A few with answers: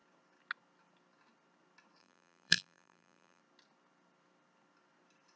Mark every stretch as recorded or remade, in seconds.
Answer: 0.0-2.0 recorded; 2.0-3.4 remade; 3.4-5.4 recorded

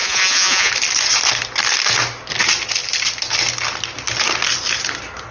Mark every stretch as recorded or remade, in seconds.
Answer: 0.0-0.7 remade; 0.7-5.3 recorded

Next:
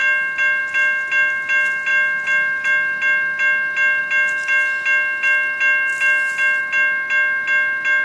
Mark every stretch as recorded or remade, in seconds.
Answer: 0.0-8.0 recorded

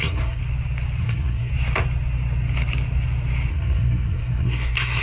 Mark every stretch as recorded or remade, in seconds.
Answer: 0.0-0.4 remade; 0.4-1.0 recorded; 1.0-1.5 remade; 1.5-3.5 recorded; 3.5-5.0 remade

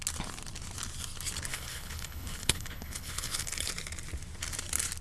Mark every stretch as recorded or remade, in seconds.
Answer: 0.0-1.5 recorded; 1.5-3.7 remade; 3.7-5.0 recorded

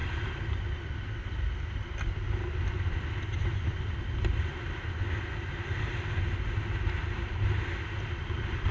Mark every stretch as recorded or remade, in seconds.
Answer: 0.0-8.7 recorded